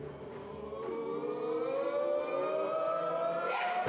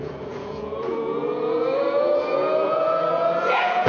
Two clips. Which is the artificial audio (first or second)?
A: second